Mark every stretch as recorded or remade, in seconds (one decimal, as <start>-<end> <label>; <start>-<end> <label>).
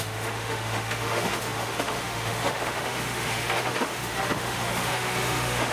0.0-5.7 remade